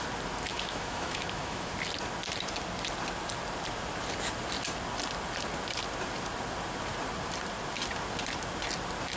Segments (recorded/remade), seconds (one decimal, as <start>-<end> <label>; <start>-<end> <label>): 0.0-0.5 recorded; 0.5-1.7 remade; 1.7-9.2 recorded